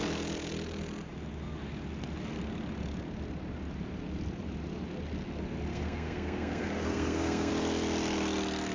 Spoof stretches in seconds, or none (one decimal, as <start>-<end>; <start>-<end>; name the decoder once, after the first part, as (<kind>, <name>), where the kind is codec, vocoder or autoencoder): 5.7-7.5 (codec, SNAC)